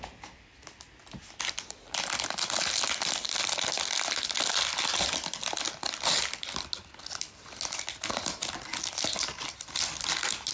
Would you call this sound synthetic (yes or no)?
no